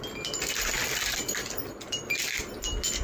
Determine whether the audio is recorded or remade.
recorded